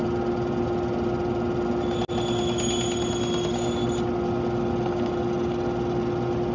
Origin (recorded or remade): recorded